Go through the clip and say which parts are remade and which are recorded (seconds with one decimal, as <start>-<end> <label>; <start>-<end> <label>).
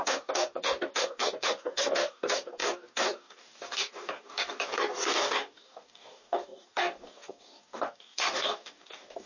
0.0-9.3 remade